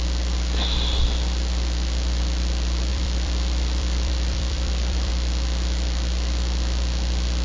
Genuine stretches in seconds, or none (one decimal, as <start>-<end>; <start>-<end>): 0.0-2.9; 5.1-7.4

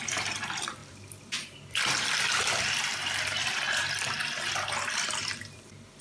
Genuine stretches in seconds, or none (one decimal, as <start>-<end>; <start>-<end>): 4.2-5.3